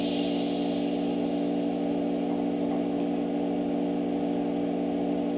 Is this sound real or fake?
real